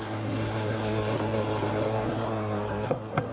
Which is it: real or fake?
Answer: fake